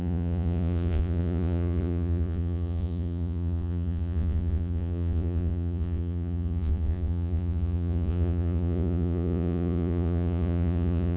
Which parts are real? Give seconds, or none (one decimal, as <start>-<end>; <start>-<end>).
none